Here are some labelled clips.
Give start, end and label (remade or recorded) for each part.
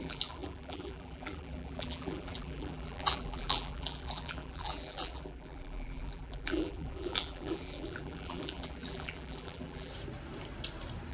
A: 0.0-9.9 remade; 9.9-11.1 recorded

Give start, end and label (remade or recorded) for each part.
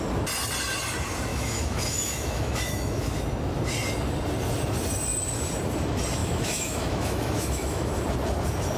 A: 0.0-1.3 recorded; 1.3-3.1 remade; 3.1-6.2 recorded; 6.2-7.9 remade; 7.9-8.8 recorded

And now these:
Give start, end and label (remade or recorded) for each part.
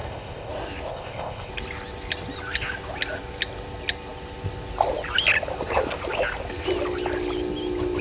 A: 0.0-0.5 remade; 0.5-0.9 recorded; 0.9-1.5 remade; 1.5-8.0 recorded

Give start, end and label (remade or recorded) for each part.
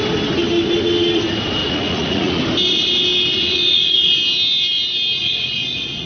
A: 0.0-1.6 recorded; 1.6-2.4 remade; 2.4-3.3 recorded; 3.3-4.1 remade; 4.1-5.2 recorded; 5.2-6.1 remade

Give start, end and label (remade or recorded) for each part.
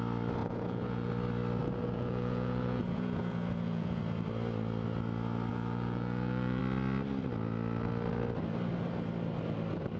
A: 0.0-0.4 recorded; 0.4-1.1 remade; 1.1-1.6 recorded; 1.6-4.0 remade; 4.0-5.5 recorded; 5.5-6.6 remade; 6.6-10.0 recorded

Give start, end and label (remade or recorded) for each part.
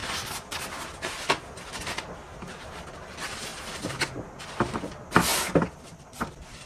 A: 0.0-3.5 recorded; 3.5-4.1 remade; 4.1-5.3 recorded; 5.3-6.7 remade